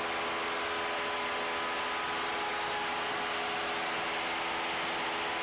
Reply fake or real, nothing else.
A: real